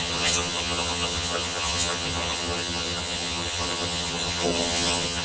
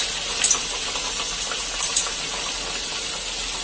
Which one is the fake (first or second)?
first